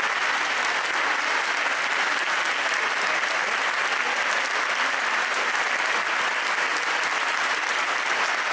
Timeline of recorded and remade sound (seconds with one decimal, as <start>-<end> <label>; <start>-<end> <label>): 0.0-8.5 recorded